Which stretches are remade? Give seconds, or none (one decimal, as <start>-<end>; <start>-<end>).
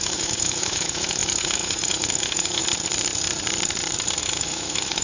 0.0-2.6; 4.2-5.0